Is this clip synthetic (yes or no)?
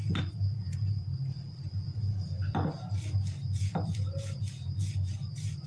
no